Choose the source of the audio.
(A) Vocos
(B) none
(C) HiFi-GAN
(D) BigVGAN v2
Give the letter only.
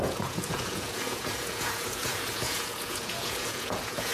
A